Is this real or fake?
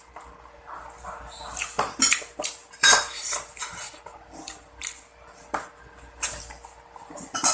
fake